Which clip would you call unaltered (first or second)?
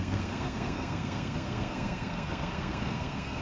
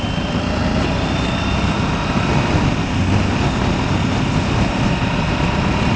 second